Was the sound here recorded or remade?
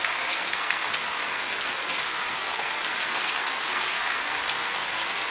remade